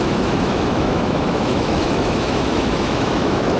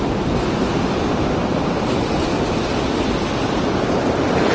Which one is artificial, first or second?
first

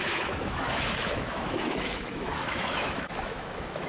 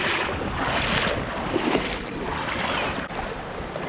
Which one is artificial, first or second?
first